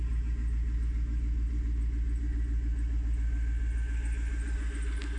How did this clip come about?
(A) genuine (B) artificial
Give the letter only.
A